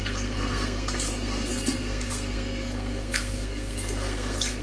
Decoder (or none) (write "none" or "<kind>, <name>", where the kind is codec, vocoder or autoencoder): codec, SNAC